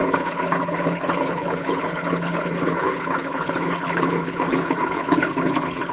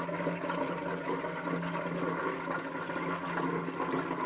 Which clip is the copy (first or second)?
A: first